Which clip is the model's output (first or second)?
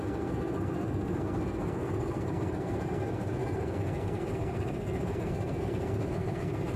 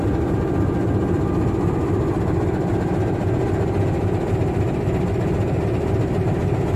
first